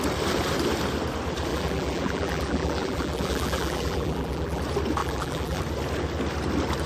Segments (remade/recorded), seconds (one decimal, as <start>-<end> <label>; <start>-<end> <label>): 0.0-1.5 recorded; 1.5-4.6 remade; 4.6-5.0 recorded; 5.0-5.6 remade; 5.6-6.9 recorded